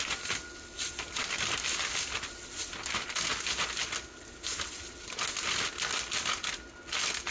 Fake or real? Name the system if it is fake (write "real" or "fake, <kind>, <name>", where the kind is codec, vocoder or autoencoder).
real